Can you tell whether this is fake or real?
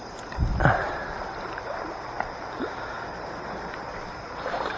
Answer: fake